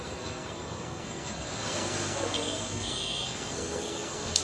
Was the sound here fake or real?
fake